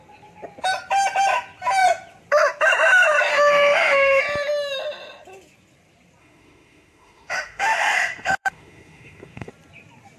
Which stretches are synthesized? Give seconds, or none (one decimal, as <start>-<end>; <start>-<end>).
3.3-4.2; 6.2-9.5